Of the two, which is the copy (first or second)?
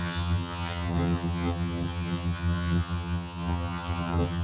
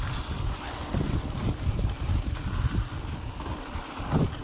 first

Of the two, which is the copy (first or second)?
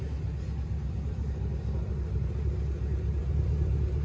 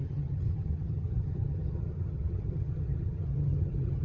second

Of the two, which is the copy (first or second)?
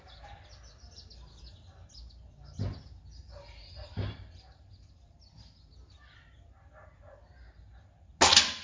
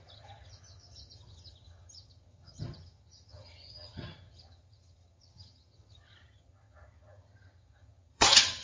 second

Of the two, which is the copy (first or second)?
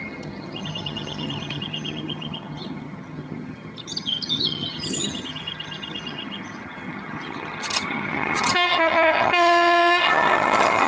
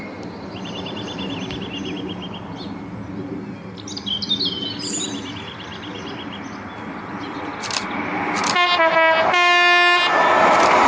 first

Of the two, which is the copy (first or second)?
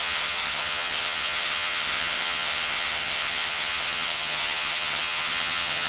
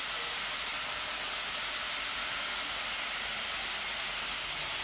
first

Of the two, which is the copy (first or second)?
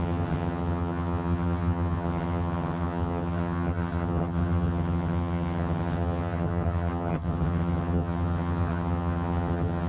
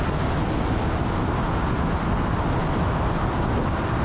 first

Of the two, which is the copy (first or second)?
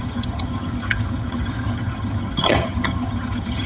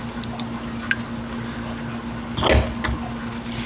first